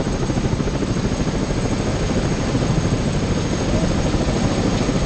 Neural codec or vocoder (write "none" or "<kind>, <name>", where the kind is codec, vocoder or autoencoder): none